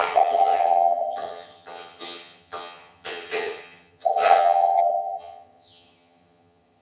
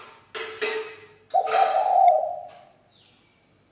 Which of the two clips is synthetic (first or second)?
first